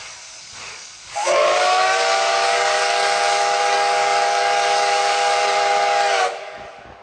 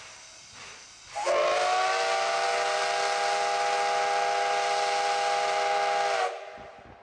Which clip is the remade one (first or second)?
first